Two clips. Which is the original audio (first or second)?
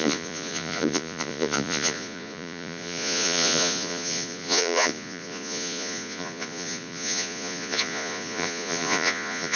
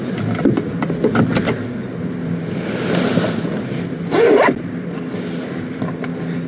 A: second